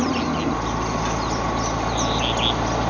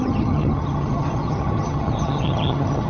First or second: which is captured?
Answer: first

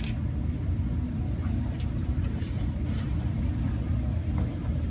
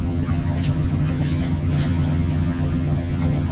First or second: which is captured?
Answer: first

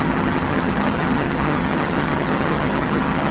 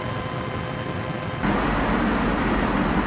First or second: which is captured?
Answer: second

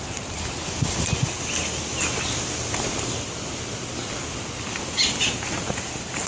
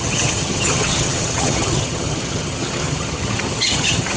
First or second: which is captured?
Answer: first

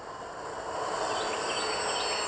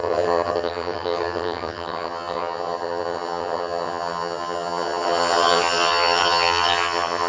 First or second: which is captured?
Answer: first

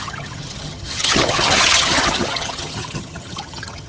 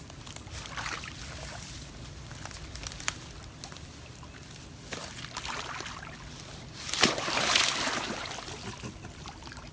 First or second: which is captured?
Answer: second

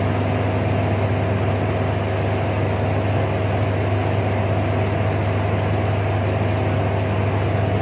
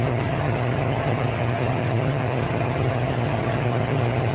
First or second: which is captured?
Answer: first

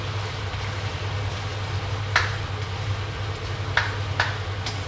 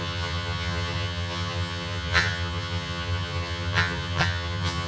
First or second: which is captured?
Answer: first